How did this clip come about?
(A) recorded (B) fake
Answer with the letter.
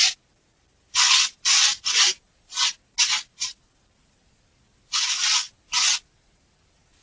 A